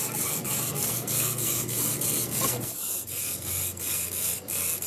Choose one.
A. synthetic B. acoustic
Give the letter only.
A